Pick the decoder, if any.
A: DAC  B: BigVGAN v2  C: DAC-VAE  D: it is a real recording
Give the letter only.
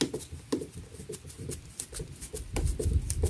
D